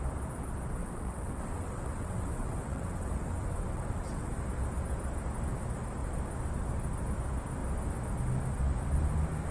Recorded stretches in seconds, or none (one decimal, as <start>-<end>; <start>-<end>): 0.0-0.8; 4.3-9.5